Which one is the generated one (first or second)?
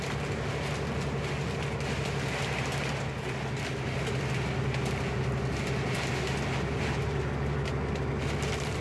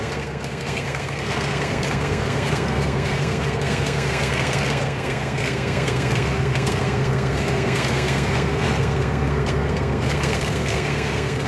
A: second